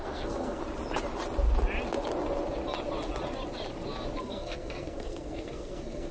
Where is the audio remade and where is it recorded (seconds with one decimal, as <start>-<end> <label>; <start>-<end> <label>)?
0.0-0.6 remade; 0.6-4.2 recorded; 4.2-6.1 remade